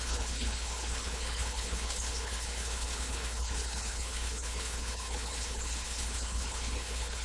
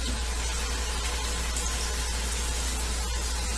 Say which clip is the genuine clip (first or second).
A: second